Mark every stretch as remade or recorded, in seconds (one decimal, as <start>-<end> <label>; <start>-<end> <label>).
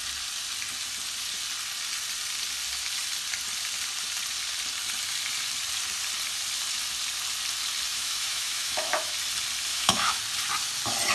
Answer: 0.0-7.9 recorded; 7.9-9.1 remade; 9.1-9.7 recorded; 9.7-10.2 remade; 10.2-11.1 recorded